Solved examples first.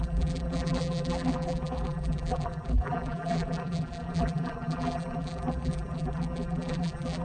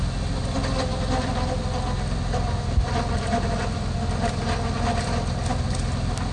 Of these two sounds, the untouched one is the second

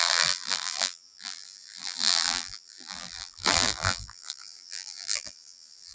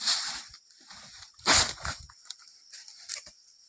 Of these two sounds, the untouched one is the second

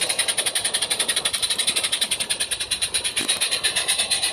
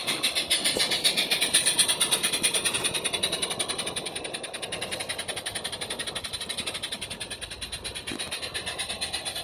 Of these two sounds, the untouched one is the second